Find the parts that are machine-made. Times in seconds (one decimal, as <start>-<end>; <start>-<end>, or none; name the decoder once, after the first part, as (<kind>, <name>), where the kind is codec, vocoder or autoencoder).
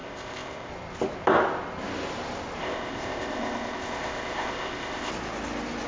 0.0-0.7 (codec, ZipCodec); 2.6-5.1